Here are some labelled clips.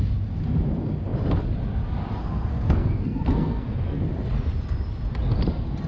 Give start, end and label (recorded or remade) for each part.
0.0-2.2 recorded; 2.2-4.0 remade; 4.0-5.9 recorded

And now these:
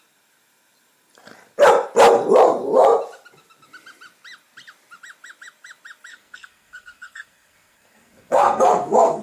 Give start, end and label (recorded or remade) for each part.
0.0-6.1 recorded; 6.1-9.2 remade

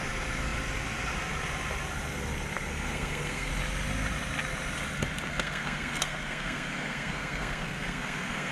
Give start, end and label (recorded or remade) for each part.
0.0-2.7 recorded; 2.7-3.5 remade; 3.5-5.3 recorded; 5.3-8.5 remade

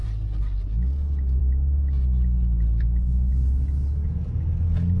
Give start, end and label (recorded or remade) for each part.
0.0-5.0 recorded

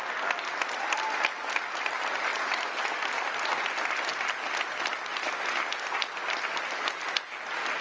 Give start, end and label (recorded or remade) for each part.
0.0-7.8 recorded

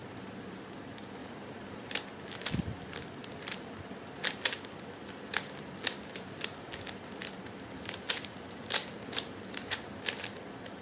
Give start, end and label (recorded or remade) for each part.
0.0-10.8 recorded

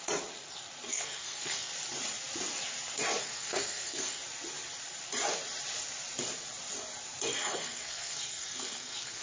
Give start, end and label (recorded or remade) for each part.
0.0-0.9 recorded; 0.9-1.7 remade; 1.7-3.2 recorded; 3.2-4.2 remade; 4.2-7.3 recorded; 7.3-9.2 remade